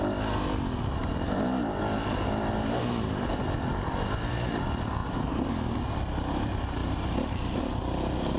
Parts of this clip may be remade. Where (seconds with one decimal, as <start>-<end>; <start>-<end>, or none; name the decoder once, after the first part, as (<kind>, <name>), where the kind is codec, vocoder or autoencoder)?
1.0-1.8 (vocoder, BigVGAN v2); 5.0-5.5; 6.8-7.6